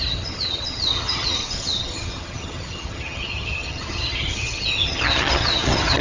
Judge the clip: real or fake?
fake